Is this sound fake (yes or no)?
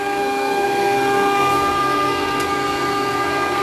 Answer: yes